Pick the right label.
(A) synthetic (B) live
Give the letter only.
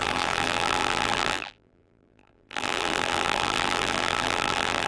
A